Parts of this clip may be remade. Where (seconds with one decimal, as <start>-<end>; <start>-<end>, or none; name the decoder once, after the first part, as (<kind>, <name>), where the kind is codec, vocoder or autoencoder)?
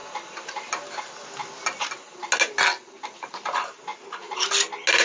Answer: 3.9-4.5 (vocoder, BigVGAN v2)